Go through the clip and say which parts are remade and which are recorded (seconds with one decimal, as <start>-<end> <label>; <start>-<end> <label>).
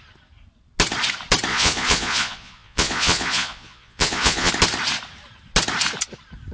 0.0-1.5 recorded; 1.5-4.5 remade; 4.5-6.5 recorded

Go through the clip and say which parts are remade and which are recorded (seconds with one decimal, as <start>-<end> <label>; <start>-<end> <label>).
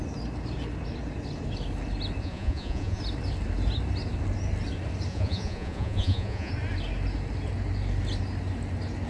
0.0-2.2 recorded; 2.2-3.0 remade; 3.0-5.1 recorded; 5.1-6.5 remade; 6.5-9.1 recorded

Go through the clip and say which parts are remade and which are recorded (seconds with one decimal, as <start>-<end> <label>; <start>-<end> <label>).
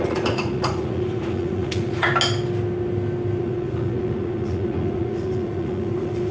0.0-2.1 remade; 2.1-3.4 recorded; 3.4-6.3 remade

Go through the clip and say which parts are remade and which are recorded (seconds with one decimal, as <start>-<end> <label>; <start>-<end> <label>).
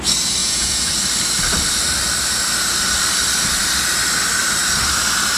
0.0-0.4 recorded; 0.4-0.9 remade; 0.9-5.4 recorded